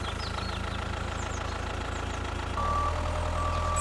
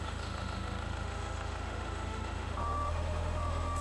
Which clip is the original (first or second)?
first